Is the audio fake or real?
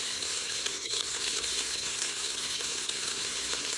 fake